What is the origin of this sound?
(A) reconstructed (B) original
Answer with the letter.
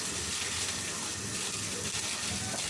B